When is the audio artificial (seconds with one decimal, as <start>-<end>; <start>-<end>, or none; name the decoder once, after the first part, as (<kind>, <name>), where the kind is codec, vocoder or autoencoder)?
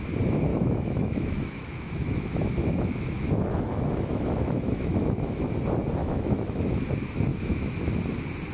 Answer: 0.5-5.5 (autoencoder, DAC-VAE); 6.0-6.8; 7.3-7.8